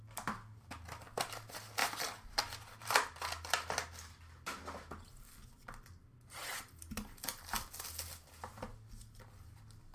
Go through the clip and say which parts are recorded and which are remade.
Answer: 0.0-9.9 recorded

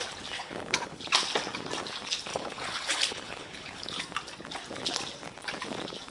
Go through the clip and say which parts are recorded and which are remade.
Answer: 0.0-0.4 recorded; 0.4-1.0 remade; 1.0-2.3 recorded; 2.3-4.0 remade; 4.0-6.1 recorded

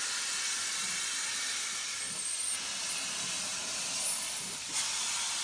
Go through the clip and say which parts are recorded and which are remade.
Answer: 0.0-5.4 recorded

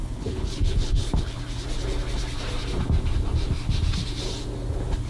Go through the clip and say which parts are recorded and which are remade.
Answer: 0.0-1.4 remade; 1.4-5.1 recorded

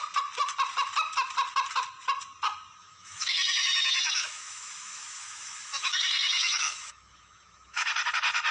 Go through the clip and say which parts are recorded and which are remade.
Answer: 0.0-2.8 recorded; 2.8-7.9 remade; 7.9-8.5 recorded

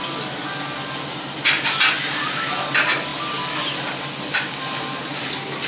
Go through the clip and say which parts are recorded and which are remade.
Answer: 0.0-5.7 recorded